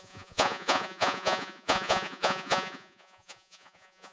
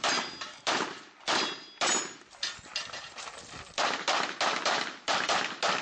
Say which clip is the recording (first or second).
second